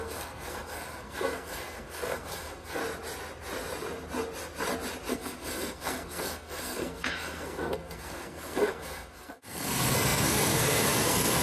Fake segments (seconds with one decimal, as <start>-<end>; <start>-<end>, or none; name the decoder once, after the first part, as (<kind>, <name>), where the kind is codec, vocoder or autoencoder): 0.0-2.8 (codec, SNAC); 5.1-11.4